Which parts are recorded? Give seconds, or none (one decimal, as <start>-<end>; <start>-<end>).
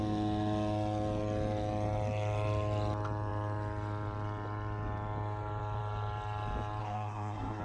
0.0-6.8